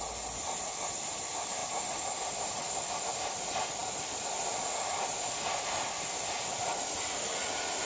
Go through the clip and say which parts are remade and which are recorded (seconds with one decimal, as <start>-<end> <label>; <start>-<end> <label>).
0.0-7.8 recorded